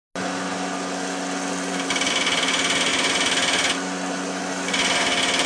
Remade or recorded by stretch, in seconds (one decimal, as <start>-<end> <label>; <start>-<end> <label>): 0.0-5.5 recorded